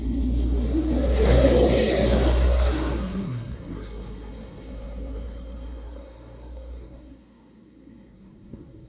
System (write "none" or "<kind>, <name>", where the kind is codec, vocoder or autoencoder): codec, SNAC